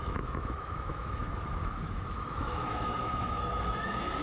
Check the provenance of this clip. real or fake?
fake